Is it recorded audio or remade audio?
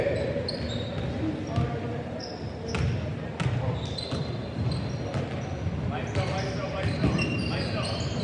recorded